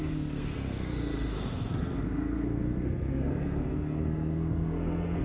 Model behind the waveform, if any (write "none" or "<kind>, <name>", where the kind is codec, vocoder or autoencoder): codec, SNAC